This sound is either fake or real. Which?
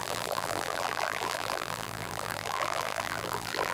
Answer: fake